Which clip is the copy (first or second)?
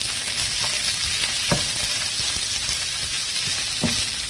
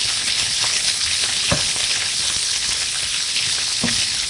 second